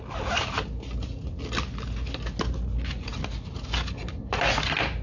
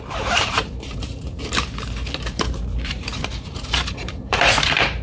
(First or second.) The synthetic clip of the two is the second